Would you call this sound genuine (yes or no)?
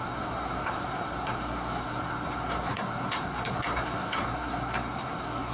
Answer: no